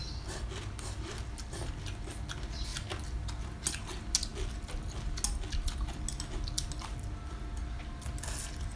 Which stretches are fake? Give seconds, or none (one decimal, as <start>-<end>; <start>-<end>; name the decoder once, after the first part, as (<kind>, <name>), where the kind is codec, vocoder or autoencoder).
none